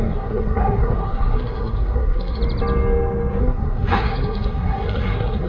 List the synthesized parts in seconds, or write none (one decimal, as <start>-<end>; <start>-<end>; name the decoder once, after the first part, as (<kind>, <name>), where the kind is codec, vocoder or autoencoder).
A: 0.0-2.4 (codec, SNAC); 3.4-5.5